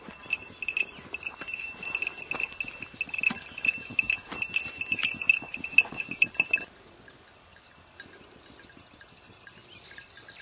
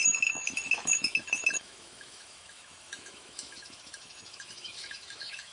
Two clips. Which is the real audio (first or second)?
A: first